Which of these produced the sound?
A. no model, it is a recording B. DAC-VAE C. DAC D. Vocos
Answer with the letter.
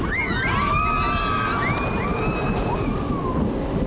A